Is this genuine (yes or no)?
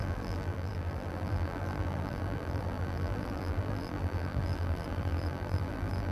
no